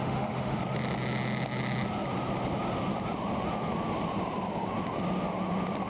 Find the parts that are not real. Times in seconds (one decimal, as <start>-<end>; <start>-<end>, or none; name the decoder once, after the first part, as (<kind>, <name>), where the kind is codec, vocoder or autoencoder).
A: 0.0-0.6 (autoencoder, DAC-VAE)